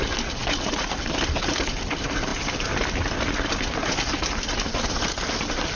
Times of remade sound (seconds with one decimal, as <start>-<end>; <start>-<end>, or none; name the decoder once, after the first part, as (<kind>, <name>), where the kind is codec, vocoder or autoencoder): none